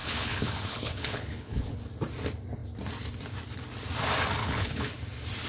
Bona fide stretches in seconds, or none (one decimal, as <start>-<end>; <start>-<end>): 1.8-4.4; 5.0-5.5